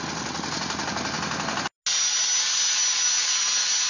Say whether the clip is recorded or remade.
recorded